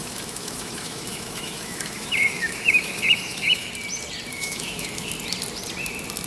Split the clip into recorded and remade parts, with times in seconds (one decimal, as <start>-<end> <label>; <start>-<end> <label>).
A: 0.0-3.7 remade; 3.7-4.3 recorded; 4.3-5.1 remade; 5.1-6.3 recorded